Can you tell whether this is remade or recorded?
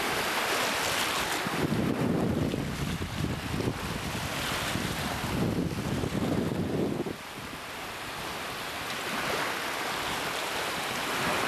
recorded